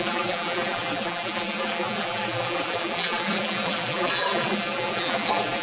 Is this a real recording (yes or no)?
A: no